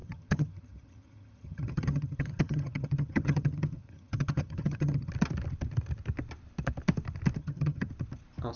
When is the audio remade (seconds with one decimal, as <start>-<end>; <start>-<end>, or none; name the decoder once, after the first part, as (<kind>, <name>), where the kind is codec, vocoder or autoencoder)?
0.0-5.1 (vocoder, HiFi-GAN); 7.4-7.9